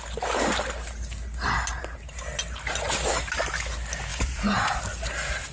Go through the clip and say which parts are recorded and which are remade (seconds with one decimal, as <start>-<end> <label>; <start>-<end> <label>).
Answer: 0.0-4.1 recorded; 4.1-4.8 remade; 4.8-5.5 recorded